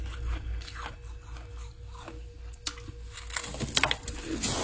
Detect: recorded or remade recorded